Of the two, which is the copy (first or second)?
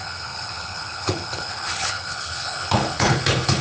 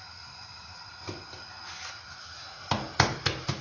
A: first